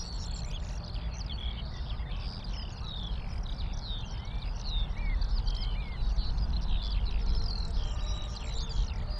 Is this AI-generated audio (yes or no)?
no